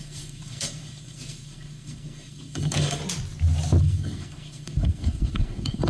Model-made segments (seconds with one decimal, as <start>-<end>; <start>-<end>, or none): 0.0-3.0; 3.8-5.9